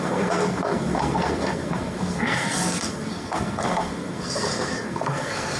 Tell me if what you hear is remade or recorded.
remade